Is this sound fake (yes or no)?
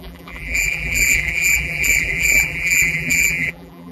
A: yes